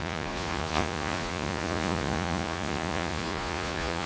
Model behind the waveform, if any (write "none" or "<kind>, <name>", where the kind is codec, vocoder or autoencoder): vocoder, Vocos